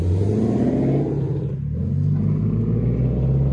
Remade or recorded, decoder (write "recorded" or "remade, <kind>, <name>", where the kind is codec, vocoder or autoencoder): recorded